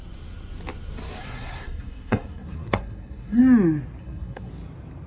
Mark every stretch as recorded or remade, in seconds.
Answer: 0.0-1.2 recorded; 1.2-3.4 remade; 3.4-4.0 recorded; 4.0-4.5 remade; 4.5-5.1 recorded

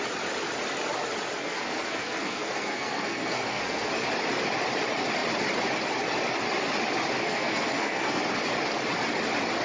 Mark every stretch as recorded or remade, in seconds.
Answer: 0.0-1.4 recorded; 1.4-3.9 remade; 3.9-7.2 recorded; 7.2-8.2 remade; 8.2-9.6 recorded

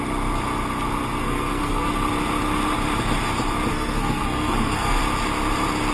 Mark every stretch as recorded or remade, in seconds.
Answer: 0.0-1.2 recorded; 1.2-1.9 remade; 1.9-3.7 recorded; 3.7-5.0 remade; 5.0-5.9 recorded

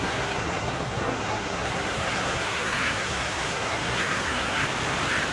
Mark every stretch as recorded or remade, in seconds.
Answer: 0.0-4.6 remade; 4.6-5.3 recorded

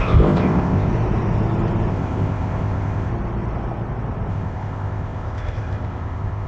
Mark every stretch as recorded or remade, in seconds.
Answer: 0.0-0.9 remade; 0.9-1.9 recorded; 1.9-3.1 remade; 3.1-4.3 recorded; 4.3-6.5 remade